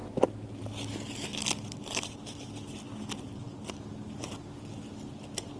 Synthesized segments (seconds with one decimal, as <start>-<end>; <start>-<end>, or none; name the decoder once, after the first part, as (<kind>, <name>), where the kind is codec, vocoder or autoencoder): none